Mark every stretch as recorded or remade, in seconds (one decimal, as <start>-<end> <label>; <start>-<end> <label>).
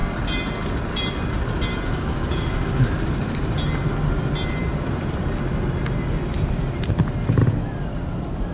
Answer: 0.0-8.5 recorded